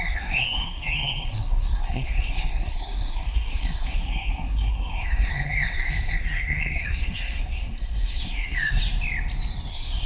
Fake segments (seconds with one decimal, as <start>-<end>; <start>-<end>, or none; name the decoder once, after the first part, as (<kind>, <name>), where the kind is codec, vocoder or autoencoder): 0.0-8.8 (codec, SNAC); 9.7-10.1